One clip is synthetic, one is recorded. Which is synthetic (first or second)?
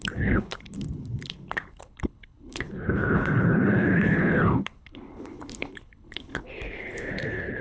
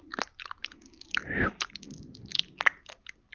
first